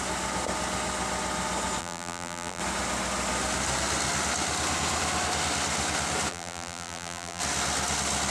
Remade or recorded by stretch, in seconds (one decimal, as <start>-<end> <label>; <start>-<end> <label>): 0.0-1.8 recorded; 1.8-2.6 remade; 2.6-6.3 recorded; 6.3-7.4 remade; 7.4-8.3 recorded